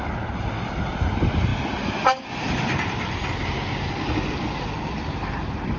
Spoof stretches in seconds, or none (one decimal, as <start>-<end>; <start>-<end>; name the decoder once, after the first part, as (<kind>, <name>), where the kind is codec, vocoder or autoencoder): none